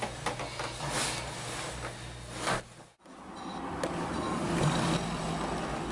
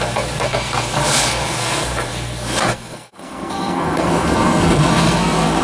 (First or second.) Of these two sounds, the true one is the first